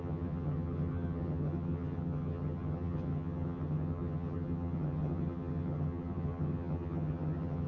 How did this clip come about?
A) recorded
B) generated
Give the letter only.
B